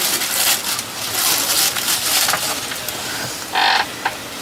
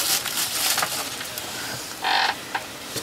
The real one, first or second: first